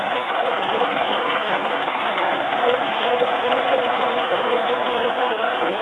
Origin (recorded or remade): remade